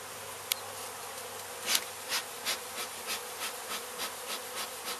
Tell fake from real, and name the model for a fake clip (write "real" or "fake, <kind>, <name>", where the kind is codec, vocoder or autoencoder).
real